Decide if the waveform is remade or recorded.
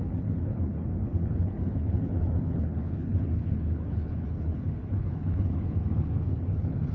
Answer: remade